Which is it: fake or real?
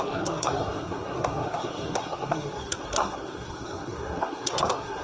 fake